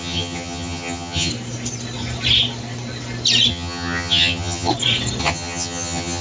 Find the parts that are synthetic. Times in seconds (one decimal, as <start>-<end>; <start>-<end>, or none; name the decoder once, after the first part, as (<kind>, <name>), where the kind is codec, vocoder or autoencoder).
0.0-1.3 (vocoder, HiFi-GAN); 3.5-4.7; 5.2-6.2